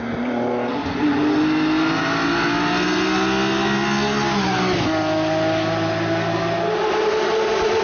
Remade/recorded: recorded